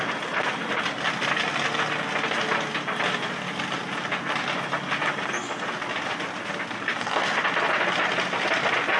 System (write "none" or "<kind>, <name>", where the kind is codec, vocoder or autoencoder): none